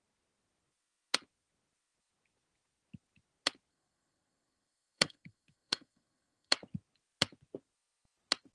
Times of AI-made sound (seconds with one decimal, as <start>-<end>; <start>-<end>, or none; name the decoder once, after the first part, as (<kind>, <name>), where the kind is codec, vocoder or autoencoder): 3.7-6.5 (codec, SNAC)